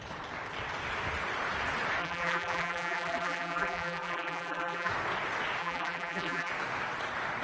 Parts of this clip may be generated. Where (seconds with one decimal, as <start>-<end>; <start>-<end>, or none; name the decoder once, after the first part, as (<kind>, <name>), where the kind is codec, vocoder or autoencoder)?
2.0-4.9 (vocoder, BigVGAN v2); 5.6-6.5